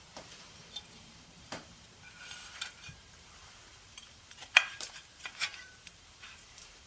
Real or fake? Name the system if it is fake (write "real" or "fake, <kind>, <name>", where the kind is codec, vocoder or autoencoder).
fake, vocoder, BigVGAN v2